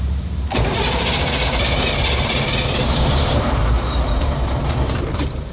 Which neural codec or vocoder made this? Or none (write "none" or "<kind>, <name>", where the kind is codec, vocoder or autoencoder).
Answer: vocoder, BigVGAN v2